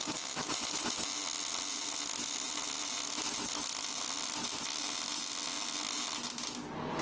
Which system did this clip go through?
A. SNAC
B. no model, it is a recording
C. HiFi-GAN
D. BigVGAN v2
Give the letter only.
B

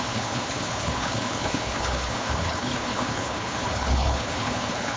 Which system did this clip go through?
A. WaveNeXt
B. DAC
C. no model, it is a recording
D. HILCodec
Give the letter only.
D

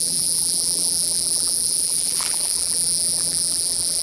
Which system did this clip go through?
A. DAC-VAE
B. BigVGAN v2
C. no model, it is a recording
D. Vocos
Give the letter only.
B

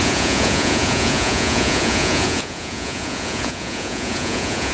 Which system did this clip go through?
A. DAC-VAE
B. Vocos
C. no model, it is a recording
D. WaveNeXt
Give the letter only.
B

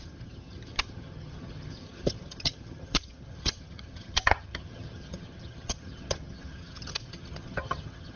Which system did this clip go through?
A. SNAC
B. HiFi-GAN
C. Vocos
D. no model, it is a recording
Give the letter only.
B